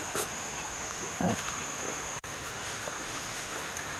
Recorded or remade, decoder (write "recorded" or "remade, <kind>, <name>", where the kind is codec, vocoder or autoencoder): remade, autoencoder, DAC-VAE